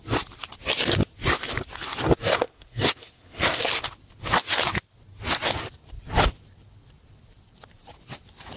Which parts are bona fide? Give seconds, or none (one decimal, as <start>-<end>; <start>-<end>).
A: 0.0-2.3; 3.6-8.6